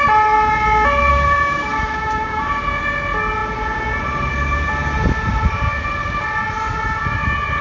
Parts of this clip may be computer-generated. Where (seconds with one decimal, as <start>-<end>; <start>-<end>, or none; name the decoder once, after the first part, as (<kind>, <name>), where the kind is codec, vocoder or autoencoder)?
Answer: 1.1-2.5 (autoencoder, DAC-VAE)